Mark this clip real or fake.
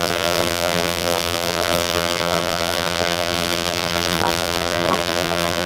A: fake